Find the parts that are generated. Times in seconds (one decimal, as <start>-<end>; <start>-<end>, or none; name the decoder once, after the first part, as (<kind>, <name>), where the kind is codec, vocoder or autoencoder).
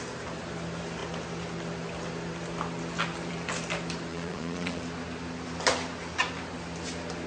4.1-4.8 (vocoder, Vocos)